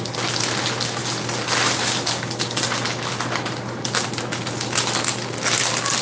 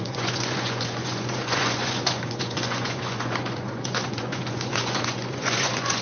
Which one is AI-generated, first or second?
second